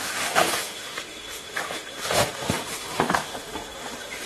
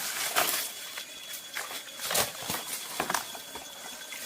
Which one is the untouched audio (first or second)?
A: second